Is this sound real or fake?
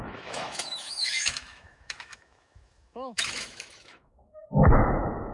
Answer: fake